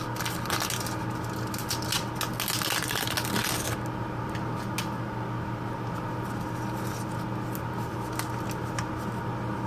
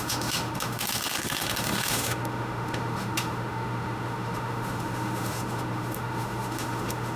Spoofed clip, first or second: second